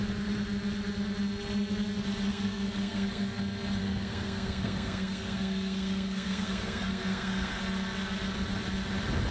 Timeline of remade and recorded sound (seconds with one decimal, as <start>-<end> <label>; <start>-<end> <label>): 0.0-2.3 recorded; 2.3-3.4 remade; 3.4-3.8 recorded; 3.8-7.6 remade; 7.6-9.3 recorded